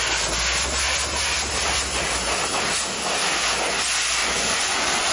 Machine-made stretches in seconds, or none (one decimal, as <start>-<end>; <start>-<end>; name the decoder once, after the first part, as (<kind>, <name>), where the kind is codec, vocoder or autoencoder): 4.2-5.1 (vocoder, Vocos)